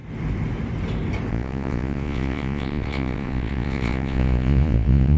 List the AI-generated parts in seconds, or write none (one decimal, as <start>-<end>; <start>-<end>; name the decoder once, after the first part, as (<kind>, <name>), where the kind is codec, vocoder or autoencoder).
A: 1.3-5.2 (vocoder, Vocos)